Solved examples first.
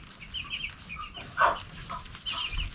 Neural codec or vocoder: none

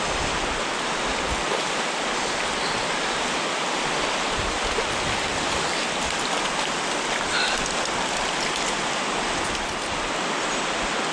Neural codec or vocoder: none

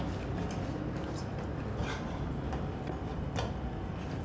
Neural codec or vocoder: none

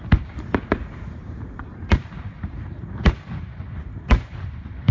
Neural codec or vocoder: vocoder, BigVGAN v2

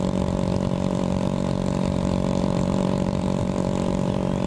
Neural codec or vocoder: vocoder, BigVGAN v2